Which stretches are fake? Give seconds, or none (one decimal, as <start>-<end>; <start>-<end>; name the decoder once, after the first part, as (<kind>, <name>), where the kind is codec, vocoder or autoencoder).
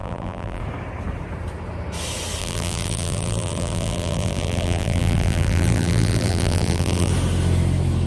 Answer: 0.0-0.6 (vocoder, BigVGAN v2); 2.4-7.1